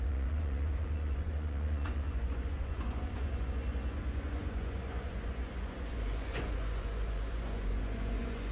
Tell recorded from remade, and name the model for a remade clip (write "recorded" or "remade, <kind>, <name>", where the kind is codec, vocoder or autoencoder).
remade, vocoder, Vocos